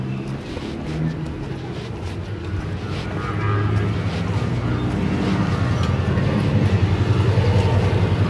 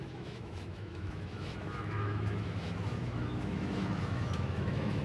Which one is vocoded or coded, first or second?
second